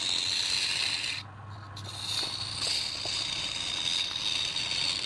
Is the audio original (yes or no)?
yes